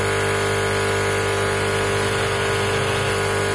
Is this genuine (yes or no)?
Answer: yes